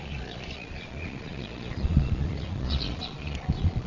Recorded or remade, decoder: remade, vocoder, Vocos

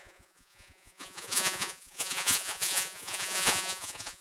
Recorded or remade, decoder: remade, vocoder, Vocos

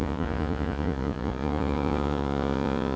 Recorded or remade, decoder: remade, vocoder, Vocos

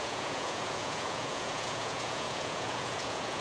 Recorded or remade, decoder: remade, vocoder, Vocos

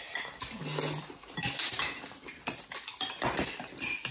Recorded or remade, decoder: recorded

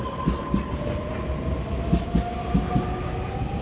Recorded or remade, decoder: recorded